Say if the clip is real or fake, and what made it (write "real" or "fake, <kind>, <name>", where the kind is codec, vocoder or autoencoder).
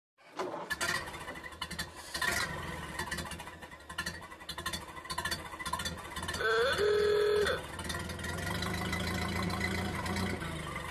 real